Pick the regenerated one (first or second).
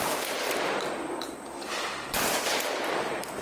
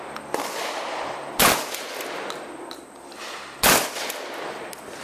first